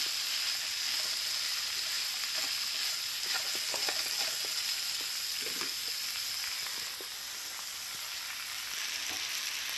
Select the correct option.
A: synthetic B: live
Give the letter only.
B